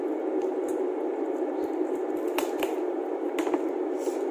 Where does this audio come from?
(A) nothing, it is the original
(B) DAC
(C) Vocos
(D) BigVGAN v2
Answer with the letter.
A